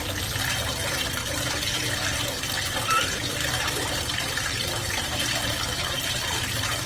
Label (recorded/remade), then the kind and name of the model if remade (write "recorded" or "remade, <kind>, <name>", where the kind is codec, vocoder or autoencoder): remade, vocoder, BigVGAN v2